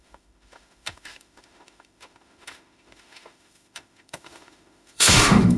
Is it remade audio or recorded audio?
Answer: remade